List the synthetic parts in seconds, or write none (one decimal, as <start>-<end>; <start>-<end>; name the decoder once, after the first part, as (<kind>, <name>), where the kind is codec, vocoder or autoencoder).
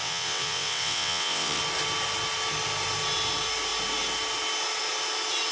0.0-1.6 (vocoder, WaveNeXt)